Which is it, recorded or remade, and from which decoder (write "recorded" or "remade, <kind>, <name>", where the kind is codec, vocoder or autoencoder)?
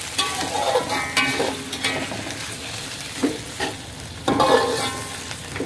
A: recorded